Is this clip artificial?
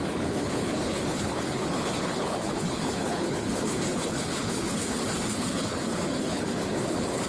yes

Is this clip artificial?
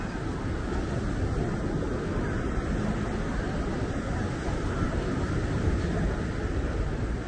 no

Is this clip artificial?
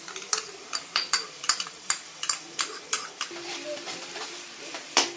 yes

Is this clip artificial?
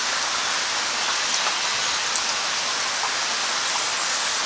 no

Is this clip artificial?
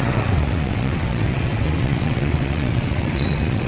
yes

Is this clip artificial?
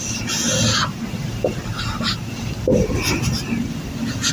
no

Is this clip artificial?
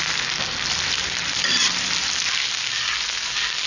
no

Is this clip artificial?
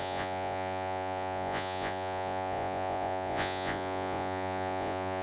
yes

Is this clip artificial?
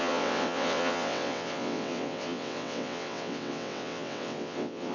yes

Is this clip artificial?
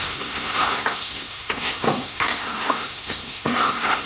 yes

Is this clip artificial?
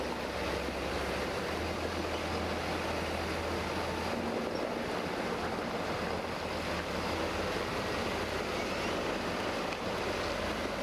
no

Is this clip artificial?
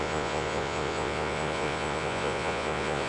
yes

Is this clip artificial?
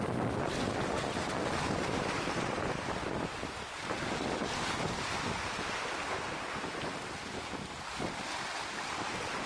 no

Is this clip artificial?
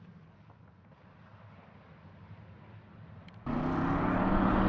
no